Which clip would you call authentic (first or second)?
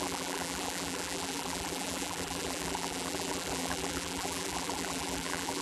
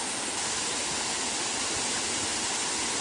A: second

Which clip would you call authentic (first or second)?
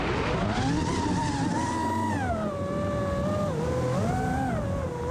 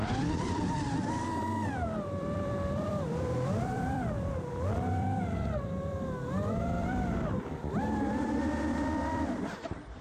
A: first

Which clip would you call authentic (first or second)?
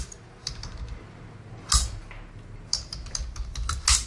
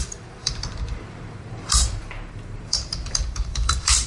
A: first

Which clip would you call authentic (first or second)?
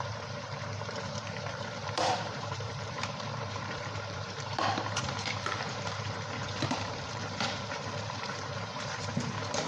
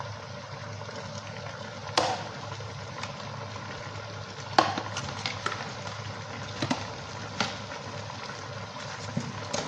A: second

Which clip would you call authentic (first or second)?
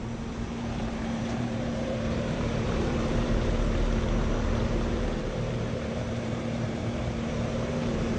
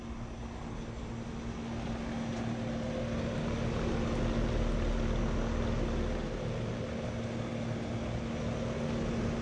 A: second